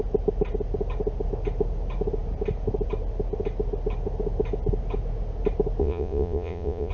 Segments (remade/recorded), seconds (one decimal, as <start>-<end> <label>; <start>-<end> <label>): 0.0-5.8 recorded; 5.8-6.9 remade

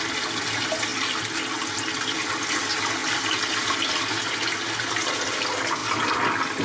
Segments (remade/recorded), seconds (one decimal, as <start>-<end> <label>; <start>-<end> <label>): 0.0-6.6 recorded

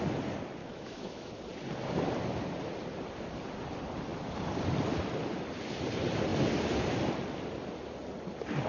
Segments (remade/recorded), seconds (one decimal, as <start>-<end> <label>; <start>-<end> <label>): 0.0-0.6 recorded; 0.6-1.3 remade; 1.3-8.7 recorded

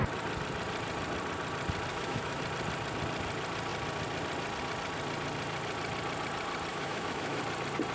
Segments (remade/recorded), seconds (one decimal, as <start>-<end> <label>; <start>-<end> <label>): 0.0-1.9 recorded; 1.9-2.4 remade; 2.4-6.7 recorded; 6.7-7.4 remade; 7.4-7.9 recorded

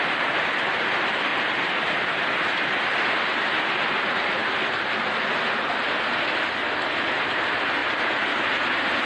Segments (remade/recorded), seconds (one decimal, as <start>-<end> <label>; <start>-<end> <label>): 0.0-4.4 remade; 4.4-7.2 recorded; 7.2-9.1 remade